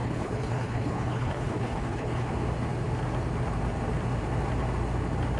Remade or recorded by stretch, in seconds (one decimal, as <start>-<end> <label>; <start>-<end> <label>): 0.0-2.3 remade; 2.3-5.4 recorded